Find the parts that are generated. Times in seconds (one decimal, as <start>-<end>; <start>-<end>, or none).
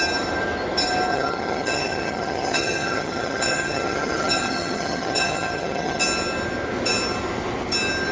1.1-6.0